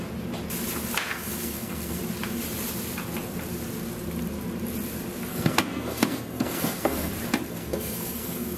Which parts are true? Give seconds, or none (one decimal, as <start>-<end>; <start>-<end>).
0.0-1.1; 2.0-5.3; 7.1-7.5